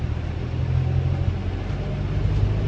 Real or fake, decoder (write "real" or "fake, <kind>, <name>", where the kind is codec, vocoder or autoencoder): real